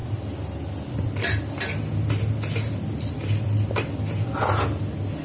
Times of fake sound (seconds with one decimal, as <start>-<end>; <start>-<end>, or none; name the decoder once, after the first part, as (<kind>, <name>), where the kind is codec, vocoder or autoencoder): none